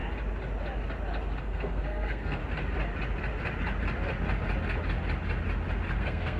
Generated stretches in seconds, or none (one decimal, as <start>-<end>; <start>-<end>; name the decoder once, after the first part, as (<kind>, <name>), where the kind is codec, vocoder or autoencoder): 1.4-2.4 (codec, SNAC); 6.0-6.4